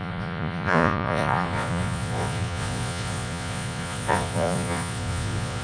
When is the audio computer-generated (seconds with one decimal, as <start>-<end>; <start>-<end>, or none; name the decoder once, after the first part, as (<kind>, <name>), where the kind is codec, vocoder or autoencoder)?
0.0-5.6 (vocoder, Vocos)